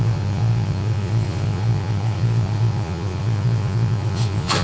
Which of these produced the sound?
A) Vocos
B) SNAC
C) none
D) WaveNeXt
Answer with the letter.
A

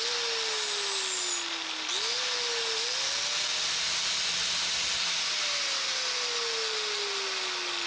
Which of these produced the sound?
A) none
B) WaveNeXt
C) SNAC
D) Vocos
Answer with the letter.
A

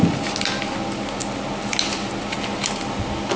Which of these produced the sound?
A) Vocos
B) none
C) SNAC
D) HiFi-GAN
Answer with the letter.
B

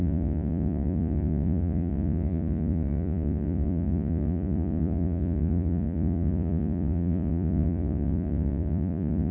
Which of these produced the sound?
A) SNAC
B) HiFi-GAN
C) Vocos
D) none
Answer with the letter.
C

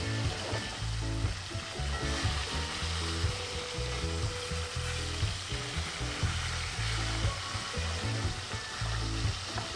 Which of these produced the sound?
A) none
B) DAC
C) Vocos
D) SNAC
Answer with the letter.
A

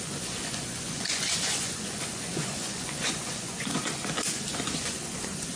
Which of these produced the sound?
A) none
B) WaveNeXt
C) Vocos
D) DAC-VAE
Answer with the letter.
C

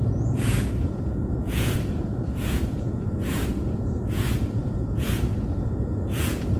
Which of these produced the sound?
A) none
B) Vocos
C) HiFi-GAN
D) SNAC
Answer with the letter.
B